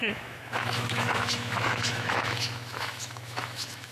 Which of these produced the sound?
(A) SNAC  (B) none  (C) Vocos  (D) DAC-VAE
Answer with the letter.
D